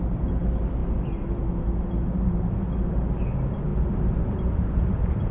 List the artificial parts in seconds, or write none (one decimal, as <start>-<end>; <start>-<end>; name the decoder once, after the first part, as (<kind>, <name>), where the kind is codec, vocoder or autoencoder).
3.7-5.3 (vocoder, BigVGAN v2)